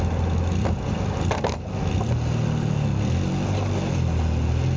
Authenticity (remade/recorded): recorded